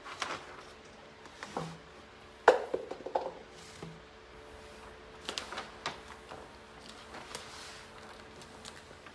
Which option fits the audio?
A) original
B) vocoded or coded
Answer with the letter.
A